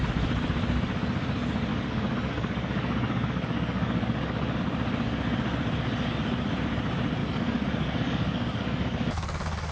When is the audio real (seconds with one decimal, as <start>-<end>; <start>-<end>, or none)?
0.0-1.7; 4.6-7.2